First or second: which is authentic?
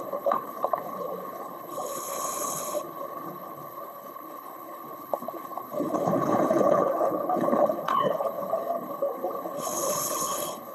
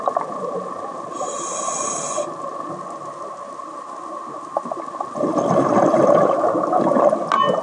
second